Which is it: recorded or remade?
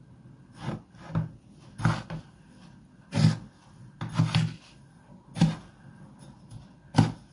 recorded